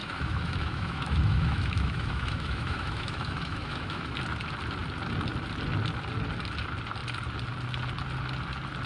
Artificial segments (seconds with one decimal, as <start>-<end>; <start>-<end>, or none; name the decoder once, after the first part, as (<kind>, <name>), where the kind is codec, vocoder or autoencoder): 0.0-4.1 (autoencoder, DAC-VAE)